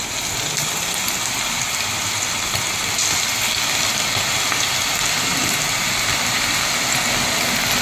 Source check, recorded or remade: recorded